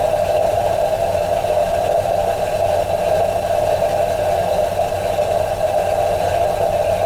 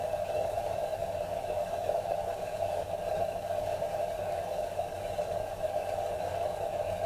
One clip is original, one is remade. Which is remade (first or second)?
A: second